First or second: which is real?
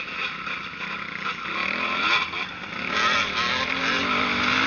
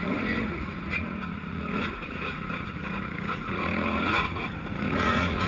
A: first